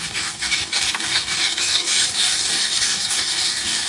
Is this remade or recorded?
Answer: remade